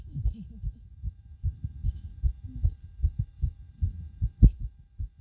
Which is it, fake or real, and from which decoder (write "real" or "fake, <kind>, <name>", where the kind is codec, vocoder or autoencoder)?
real